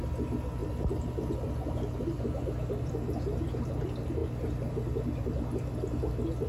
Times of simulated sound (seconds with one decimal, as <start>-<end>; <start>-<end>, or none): none